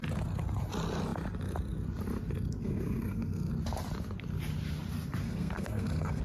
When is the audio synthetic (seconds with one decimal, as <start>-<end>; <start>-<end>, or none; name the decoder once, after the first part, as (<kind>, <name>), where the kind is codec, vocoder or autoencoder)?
2.6-3.5 (codec, SNAC); 5.2-6.2